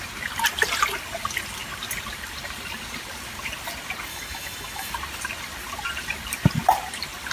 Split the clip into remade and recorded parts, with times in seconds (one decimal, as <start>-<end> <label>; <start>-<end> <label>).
0.0-4.1 recorded; 4.1-4.9 remade; 4.9-7.3 recorded